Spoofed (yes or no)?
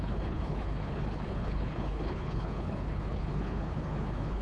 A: yes